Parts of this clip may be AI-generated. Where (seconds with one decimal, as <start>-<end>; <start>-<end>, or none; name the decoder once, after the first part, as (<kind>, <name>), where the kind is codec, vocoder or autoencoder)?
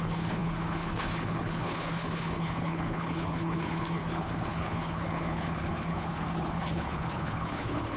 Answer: 0.0-8.0 (codec, HILCodec)